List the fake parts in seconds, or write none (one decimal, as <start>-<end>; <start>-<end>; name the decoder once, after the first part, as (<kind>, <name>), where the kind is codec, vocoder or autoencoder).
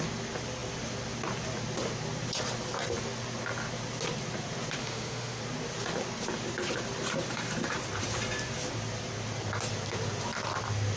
4.8-5.4 (autoencoder, DAC-VAE)